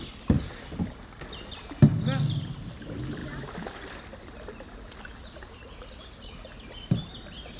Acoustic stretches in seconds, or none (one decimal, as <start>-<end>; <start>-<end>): 0.0-7.6